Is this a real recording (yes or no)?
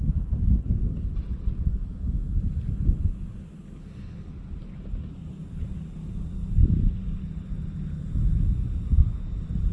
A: yes